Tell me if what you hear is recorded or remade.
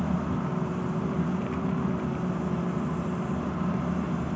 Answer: recorded